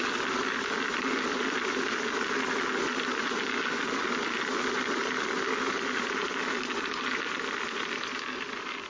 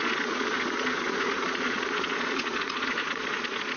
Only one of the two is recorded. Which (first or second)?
first